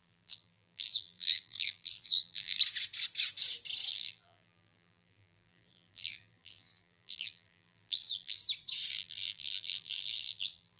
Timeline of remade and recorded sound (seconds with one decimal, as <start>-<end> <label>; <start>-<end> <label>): 0.0-2.6 remade; 2.6-3.9 recorded; 3.9-8.4 remade; 8.4-8.9 recorded; 8.9-10.8 remade